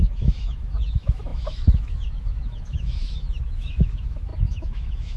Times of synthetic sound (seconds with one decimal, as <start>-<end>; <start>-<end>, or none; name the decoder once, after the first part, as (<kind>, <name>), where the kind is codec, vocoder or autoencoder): 0.0-5.2 (autoencoder, DAC-VAE)